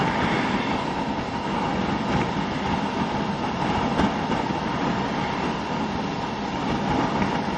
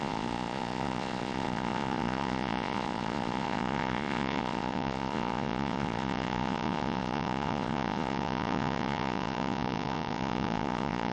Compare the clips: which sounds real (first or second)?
first